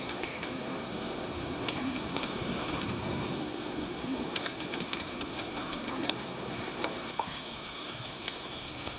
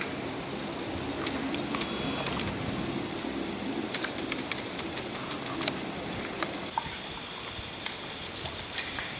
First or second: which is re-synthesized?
first